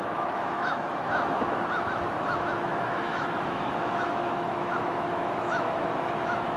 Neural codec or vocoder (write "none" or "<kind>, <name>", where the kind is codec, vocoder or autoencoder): autoencoder, DAC-VAE